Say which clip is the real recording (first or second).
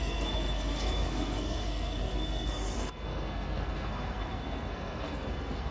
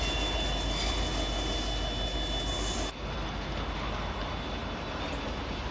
second